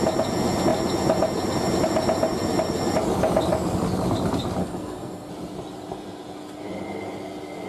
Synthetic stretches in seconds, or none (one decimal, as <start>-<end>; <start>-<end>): 4.6-5.3